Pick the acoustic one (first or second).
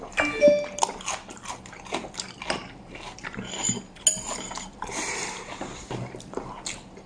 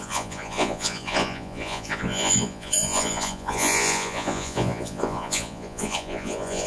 first